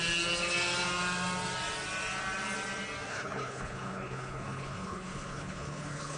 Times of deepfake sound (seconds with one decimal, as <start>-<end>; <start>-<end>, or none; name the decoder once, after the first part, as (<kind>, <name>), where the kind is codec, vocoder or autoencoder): 3.1-6.2 (codec, HILCodec)